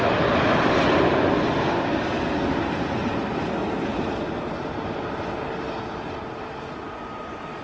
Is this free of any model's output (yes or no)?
yes